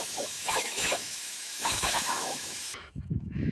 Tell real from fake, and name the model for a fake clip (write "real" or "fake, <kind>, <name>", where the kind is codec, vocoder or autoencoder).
fake, autoencoder, DAC-VAE